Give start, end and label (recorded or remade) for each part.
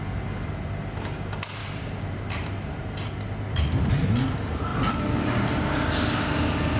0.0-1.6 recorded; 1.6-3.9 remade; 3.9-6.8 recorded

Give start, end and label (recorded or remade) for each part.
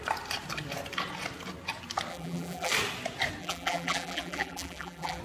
0.0-2.1 recorded; 2.1-2.7 remade; 2.7-3.4 recorded; 3.4-5.2 remade